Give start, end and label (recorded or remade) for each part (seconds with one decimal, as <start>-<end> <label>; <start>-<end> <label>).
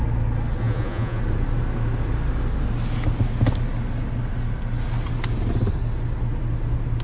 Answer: 0.0-0.6 recorded; 0.6-1.2 remade; 1.2-7.0 recorded